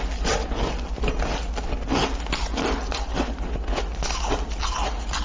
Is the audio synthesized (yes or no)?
no